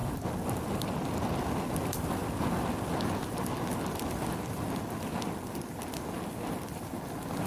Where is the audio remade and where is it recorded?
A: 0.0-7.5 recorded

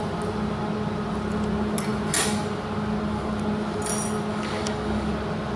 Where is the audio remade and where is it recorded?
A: 0.0-4.3 recorded; 4.3-5.1 remade; 5.1-5.6 recorded